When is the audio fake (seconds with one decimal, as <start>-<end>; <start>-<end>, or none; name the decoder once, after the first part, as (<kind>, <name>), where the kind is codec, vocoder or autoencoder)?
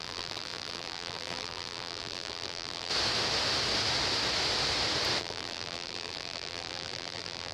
0.0-2.9 (vocoder, BigVGAN v2); 5.2-7.5